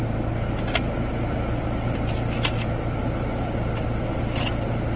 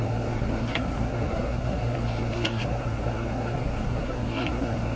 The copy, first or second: second